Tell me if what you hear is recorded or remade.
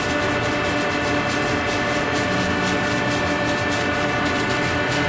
recorded